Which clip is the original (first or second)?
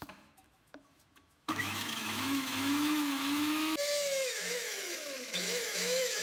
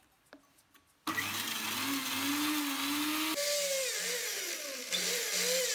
second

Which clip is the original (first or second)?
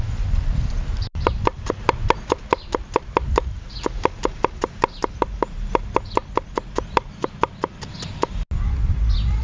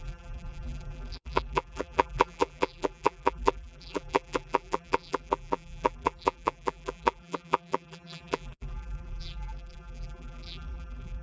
first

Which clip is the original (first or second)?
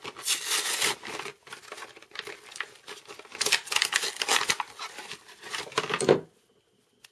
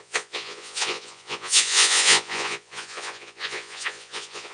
first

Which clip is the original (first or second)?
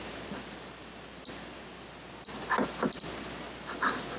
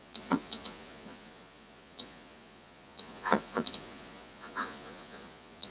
first